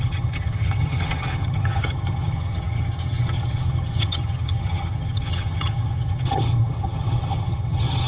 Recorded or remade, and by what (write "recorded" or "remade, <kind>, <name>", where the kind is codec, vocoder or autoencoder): remade, vocoder, HiFi-GAN